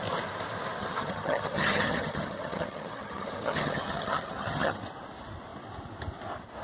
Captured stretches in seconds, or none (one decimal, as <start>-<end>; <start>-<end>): 0.0-0.8; 4.8-6.6

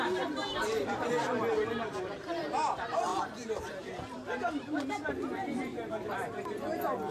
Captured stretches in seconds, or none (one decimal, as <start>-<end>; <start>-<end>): 0.0-0.4; 1.1-3.1; 4.9-5.7; 6.6-7.1